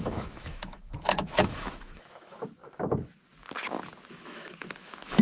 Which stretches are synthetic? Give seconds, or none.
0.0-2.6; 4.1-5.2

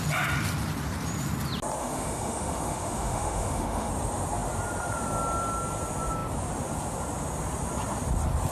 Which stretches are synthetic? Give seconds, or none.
1.8-3.9

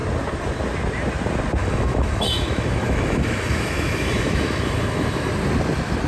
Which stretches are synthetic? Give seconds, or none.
1.6-5.3